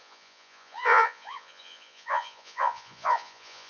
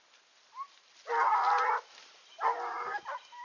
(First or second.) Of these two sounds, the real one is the second